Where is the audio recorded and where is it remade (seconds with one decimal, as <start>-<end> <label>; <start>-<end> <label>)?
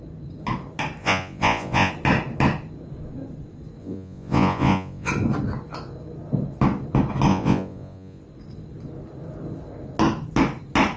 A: 0.0-1.0 recorded; 1.0-1.9 remade; 1.9-3.8 recorded; 3.8-5.1 remade; 5.1-7.3 recorded; 7.3-8.2 remade; 8.2-11.0 recorded